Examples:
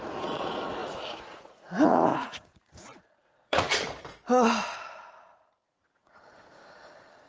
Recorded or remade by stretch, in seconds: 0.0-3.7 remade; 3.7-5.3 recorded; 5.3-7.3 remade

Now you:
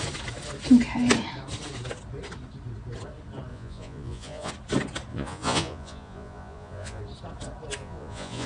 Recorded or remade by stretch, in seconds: 0.0-3.5 recorded; 3.5-4.5 remade; 4.5-5.1 recorded; 5.1-7.0 remade; 7.0-7.8 recorded; 7.8-8.5 remade

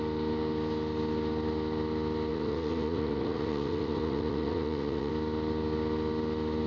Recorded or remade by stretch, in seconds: 0.0-2.3 recorded; 2.3-5.1 remade; 5.1-6.7 recorded

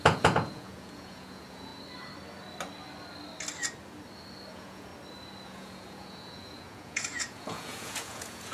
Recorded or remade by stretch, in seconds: 0.0-1.7 remade; 1.7-4.5 recorded; 4.5-4.9 remade; 4.9-5.4 recorded; 5.4-8.5 remade

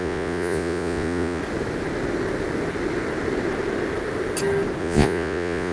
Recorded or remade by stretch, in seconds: 0.0-1.4 remade; 1.4-4.8 recorded; 4.8-5.7 remade